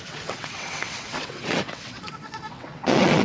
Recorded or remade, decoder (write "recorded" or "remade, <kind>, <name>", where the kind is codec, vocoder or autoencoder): remade, vocoder, WaveNeXt